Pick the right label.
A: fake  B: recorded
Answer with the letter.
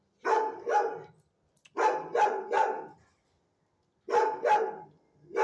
B